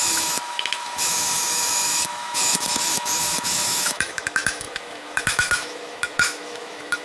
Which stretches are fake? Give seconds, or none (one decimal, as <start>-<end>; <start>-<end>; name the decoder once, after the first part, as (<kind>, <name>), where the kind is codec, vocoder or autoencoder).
0.0-7.0 (autoencoder, DAC-VAE)